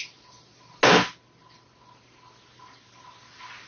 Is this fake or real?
real